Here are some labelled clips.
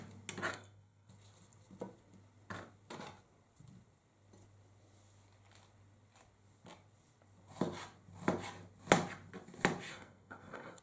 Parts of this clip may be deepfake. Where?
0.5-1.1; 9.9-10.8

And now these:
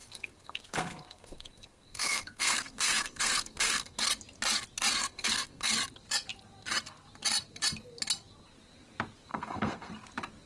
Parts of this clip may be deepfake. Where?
0.0-4.0; 5.0-5.7; 9.3-9.9